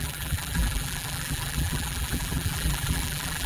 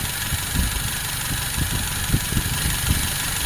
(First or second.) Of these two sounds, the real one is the second